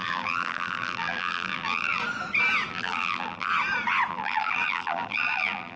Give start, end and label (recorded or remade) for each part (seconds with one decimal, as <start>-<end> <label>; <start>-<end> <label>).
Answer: 0.0-2.0 remade; 2.0-2.7 recorded; 2.7-3.5 remade; 3.5-4.1 recorded; 4.1-5.8 remade